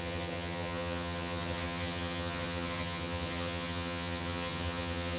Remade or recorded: remade